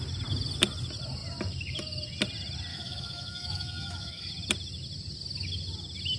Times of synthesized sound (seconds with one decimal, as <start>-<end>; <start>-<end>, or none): 2.7-4.3